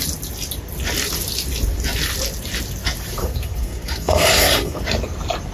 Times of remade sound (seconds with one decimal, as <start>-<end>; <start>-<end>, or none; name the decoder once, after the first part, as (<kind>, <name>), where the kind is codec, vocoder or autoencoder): 3.2-4.8 (codec, SNAC)